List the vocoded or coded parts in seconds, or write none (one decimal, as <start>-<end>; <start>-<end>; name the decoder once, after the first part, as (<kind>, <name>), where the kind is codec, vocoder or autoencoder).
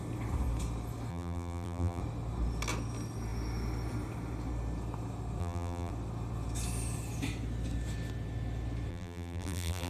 1.1-2.0 (vocoder, BigVGAN v2); 5.4-5.9; 8.9-9.9